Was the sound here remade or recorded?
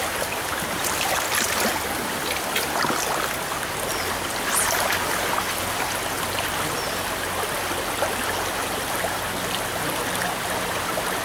recorded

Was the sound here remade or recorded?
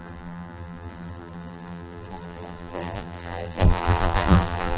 remade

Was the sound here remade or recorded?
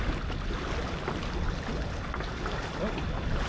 recorded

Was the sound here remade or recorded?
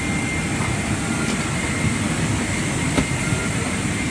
recorded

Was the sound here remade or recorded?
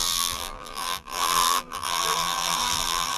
remade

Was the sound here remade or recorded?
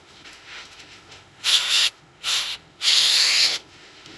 remade